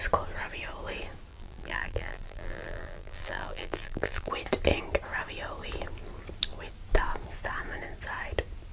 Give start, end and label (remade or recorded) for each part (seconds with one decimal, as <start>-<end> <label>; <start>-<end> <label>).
0.0-1.3 recorded; 1.3-4.3 remade; 4.3-8.7 recorded